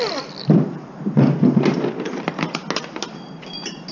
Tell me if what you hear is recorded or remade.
recorded